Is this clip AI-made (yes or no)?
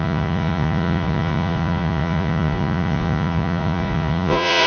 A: yes